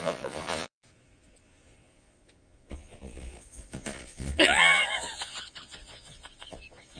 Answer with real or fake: fake